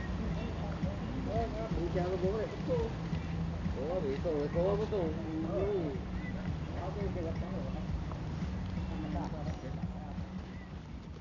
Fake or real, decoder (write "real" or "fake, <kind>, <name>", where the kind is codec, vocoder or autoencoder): real